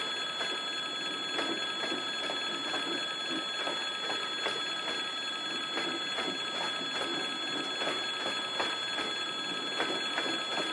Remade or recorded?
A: recorded